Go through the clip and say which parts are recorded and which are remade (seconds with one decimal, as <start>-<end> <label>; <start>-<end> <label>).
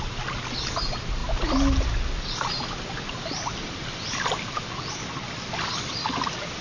0.0-1.2 recorded; 1.2-4.9 remade; 4.9-6.6 recorded